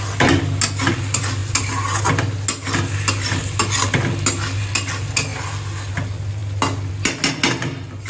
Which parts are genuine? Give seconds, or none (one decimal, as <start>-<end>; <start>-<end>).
0.0-8.1